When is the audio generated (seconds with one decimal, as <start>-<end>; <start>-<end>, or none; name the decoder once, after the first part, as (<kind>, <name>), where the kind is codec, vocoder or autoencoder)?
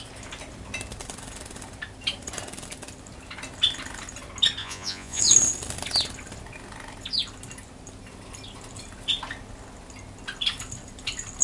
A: 4.6-5.2 (vocoder, Vocos)